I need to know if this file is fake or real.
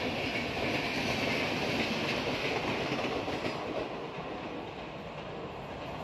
real